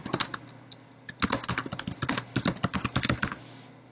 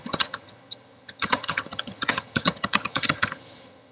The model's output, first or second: second